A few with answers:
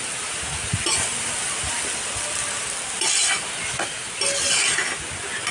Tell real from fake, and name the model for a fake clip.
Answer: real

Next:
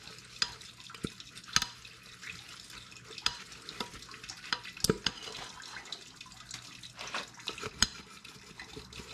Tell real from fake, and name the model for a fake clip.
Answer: real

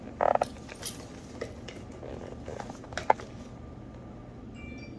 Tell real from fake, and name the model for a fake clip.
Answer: real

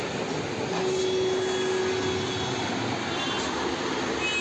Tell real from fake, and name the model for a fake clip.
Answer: real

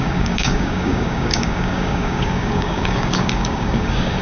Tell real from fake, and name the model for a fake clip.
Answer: fake, codec, DAC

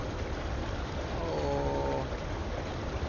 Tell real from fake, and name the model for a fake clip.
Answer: real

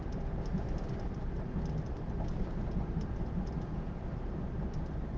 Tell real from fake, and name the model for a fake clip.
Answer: real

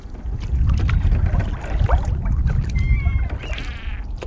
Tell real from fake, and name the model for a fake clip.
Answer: real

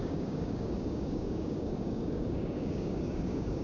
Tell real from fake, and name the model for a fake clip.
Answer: fake, codec, DAC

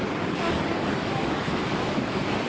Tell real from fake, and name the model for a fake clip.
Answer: fake, codec, DAC